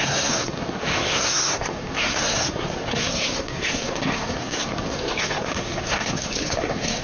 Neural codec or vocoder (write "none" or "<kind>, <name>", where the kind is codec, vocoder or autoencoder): codec, SNAC